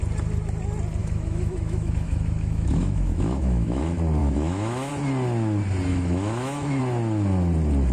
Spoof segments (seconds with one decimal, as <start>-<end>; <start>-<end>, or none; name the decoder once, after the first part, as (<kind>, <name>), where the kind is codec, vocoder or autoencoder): 1.0-3.8 (autoencoder, DAC-VAE); 4.2-4.9; 5.9-6.8